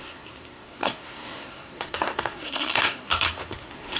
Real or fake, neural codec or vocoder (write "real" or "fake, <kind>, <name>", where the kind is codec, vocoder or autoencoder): fake, codec, SNAC